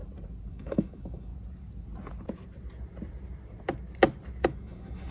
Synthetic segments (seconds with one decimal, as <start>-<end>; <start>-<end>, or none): 0.5-1.3; 4.4-5.1